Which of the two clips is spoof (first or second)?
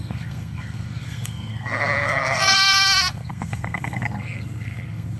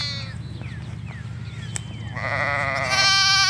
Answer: first